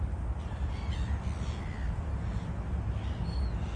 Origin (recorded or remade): recorded